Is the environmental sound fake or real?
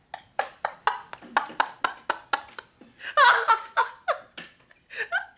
real